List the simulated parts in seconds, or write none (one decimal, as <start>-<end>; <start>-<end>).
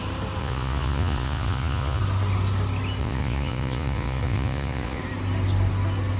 0.4-2.0; 3.0-5.0